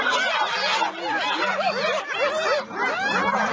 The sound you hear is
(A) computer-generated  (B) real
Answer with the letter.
B